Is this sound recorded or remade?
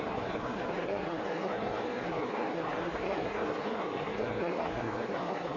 remade